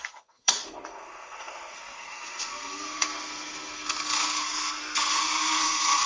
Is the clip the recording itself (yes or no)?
no